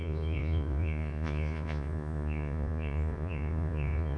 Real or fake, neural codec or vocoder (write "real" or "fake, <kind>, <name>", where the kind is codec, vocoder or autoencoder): fake, vocoder, Vocos